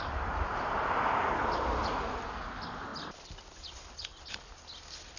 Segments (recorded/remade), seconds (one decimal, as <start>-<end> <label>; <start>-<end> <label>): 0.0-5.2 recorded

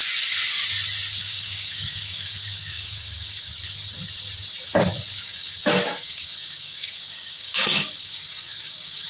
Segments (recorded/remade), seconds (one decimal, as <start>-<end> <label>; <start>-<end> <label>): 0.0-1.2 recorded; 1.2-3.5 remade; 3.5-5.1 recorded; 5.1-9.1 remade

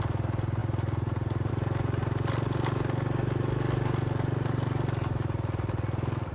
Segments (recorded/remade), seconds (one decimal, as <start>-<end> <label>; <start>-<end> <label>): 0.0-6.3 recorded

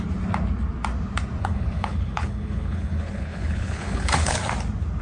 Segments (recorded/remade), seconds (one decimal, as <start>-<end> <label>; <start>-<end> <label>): 0.0-1.4 recorded; 1.4-4.4 remade; 4.4-5.0 recorded

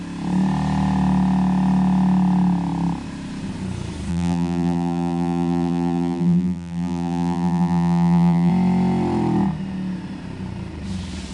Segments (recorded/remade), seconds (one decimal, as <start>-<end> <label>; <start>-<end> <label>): 0.0-4.1 recorded; 4.1-8.5 remade; 8.5-11.3 recorded

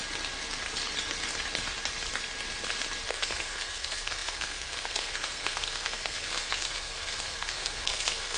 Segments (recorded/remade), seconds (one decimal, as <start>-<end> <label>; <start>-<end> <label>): 0.0-3.1 recorded; 3.1-8.4 remade

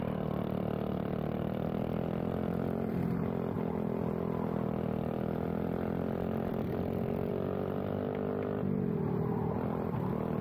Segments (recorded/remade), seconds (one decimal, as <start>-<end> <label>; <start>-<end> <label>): 0.0-10.4 recorded

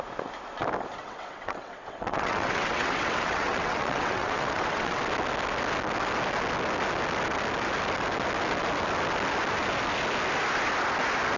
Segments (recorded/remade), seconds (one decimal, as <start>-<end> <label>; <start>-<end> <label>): 0.0-1.0 recorded; 1.0-5.0 remade; 5.0-11.4 recorded